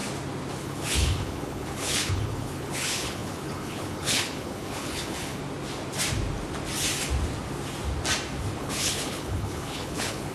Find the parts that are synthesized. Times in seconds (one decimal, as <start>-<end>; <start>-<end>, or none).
0.6-5.4; 8.6-10.3